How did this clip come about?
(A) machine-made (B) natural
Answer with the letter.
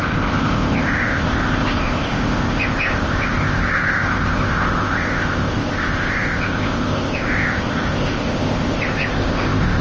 A